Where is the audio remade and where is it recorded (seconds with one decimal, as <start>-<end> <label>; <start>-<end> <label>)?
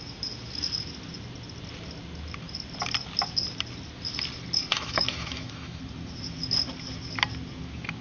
0.0-4.7 recorded; 4.7-5.8 remade; 5.8-8.0 recorded